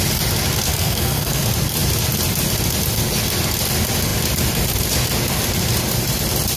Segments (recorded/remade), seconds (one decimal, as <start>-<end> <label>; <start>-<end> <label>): 0.0-0.7 recorded; 0.7-1.4 remade; 1.4-6.6 recorded